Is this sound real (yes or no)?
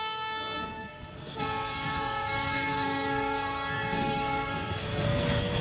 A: no